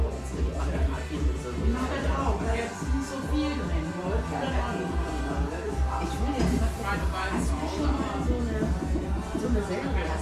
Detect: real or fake real